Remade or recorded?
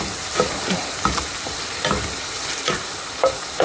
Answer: recorded